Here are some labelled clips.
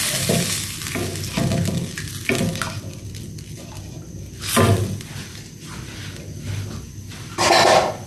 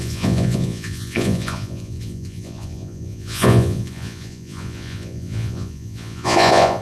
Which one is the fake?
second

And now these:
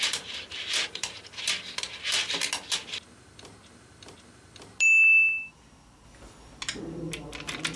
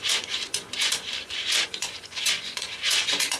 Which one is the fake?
second